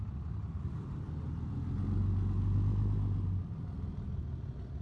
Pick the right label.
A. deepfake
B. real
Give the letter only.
B